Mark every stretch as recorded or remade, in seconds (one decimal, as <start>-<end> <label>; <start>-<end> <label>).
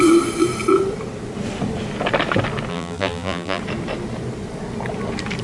0.0-2.7 recorded; 2.7-3.6 remade; 3.6-5.4 recorded